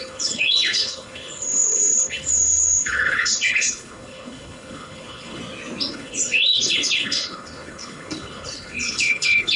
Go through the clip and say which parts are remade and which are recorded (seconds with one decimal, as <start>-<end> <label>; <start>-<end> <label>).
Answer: 0.0-5.4 remade; 5.4-5.9 recorded; 5.9-9.6 remade